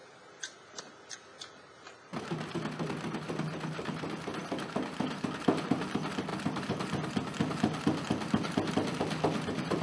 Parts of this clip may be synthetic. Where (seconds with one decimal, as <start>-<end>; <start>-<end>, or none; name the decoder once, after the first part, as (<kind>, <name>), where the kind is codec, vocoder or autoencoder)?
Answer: 0.0-0.8 (vocoder, BigVGAN v2); 1.3-2.4